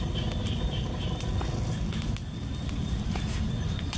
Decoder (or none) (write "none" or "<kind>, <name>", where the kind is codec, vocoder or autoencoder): none